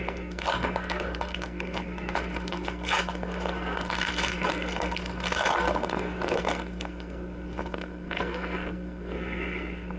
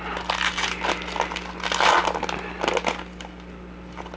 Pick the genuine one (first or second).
second